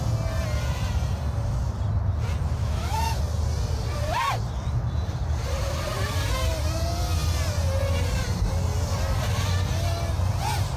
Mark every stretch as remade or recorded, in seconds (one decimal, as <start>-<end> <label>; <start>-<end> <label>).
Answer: 0.0-2.6 recorded; 2.6-3.2 remade; 3.2-10.8 recorded